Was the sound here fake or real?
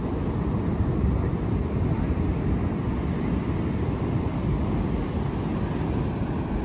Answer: real